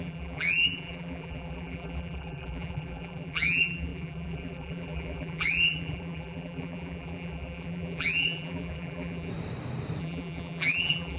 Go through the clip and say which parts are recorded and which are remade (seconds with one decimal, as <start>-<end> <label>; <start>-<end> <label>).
0.0-9.3 remade; 9.3-10.0 recorded; 10.0-11.2 remade